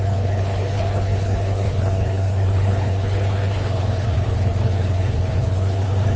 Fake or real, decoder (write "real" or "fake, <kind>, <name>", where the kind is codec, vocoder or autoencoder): fake, codec, HILCodec